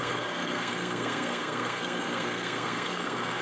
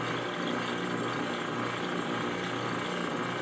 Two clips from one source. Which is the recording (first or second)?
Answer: second